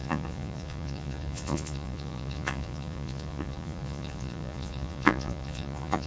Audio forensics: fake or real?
fake